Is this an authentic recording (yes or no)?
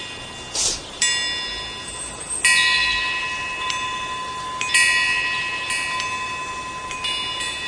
yes